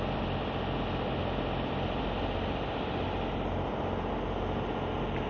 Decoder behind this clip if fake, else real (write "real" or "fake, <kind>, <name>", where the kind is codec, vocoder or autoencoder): real